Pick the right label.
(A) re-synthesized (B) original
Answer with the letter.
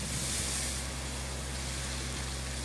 B